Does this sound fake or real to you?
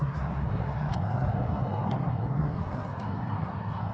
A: fake